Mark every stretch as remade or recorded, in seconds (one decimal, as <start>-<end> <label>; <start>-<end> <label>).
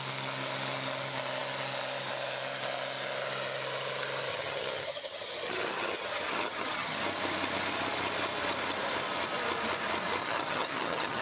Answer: 0.0-4.3 recorded; 4.3-7.0 remade; 7.0-10.2 recorded; 10.2-11.2 remade